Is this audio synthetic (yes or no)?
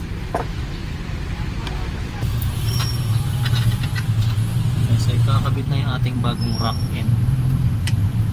yes